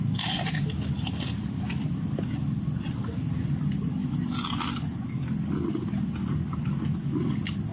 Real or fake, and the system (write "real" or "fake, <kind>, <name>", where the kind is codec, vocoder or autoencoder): real